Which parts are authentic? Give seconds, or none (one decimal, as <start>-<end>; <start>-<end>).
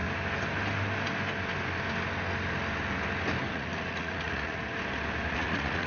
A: 0.0-3.5; 4.6-5.3